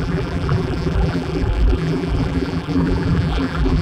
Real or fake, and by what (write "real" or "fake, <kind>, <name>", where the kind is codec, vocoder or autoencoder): fake, vocoder, BigVGAN v2